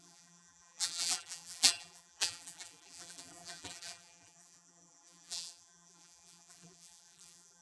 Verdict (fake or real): fake